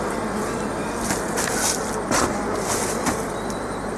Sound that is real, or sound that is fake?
real